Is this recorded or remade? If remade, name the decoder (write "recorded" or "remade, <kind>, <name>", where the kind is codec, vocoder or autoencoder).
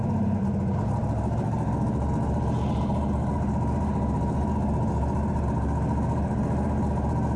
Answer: recorded